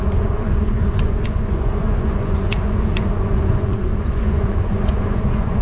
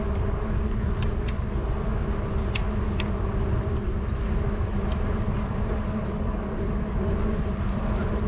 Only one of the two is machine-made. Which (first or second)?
first